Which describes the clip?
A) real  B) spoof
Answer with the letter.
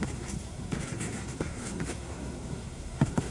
B